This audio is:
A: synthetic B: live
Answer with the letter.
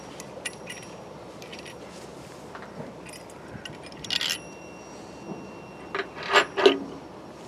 B